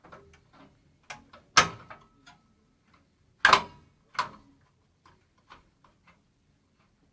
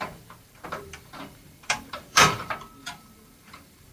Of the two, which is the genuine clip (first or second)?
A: first